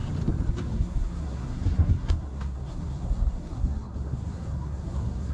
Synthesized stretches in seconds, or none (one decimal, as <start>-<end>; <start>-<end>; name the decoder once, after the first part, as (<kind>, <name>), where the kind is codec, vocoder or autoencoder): 0.5-5.3 (codec, SNAC)